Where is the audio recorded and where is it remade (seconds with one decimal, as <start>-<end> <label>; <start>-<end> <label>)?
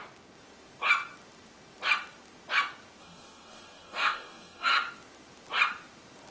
0.0-3.0 recorded; 3.0-4.7 remade; 4.7-6.3 recorded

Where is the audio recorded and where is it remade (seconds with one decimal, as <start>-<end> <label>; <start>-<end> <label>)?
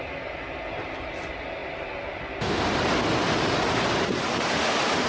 0.0-5.1 recorded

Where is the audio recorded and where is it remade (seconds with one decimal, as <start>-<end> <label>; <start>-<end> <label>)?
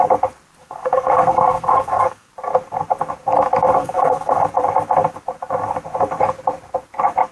0.0-0.6 recorded; 0.6-2.3 remade; 2.3-3.8 recorded; 3.8-4.4 remade; 4.4-7.3 recorded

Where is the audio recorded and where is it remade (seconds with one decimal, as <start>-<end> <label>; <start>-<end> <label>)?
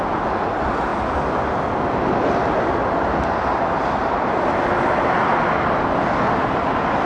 0.0-7.1 recorded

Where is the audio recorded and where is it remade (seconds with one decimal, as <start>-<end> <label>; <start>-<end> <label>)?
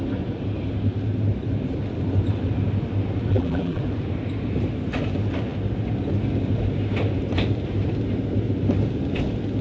0.0-3.3 recorded; 3.3-3.8 remade; 3.8-9.6 recorded